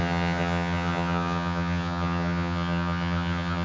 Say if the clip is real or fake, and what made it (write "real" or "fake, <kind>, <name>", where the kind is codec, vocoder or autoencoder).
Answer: fake, vocoder, HiFi-GAN